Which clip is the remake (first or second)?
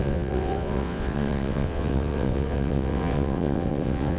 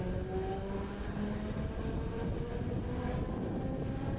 first